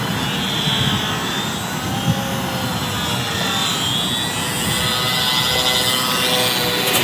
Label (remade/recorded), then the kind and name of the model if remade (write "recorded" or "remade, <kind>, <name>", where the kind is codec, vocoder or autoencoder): recorded